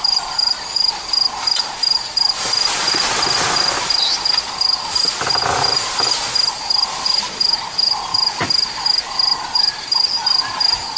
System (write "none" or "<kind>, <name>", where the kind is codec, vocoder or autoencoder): none